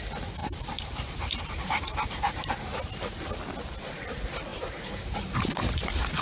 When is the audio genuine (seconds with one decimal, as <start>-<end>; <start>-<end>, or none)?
0.0-0.4; 2.5-4.5; 5.5-6.2